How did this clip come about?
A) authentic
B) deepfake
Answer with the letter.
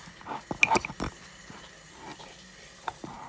A